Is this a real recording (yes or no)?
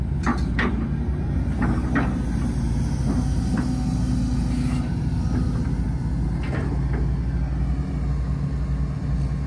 yes